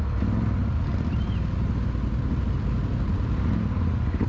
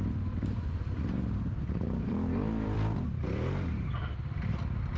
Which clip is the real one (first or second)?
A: first